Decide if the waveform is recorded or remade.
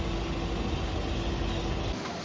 recorded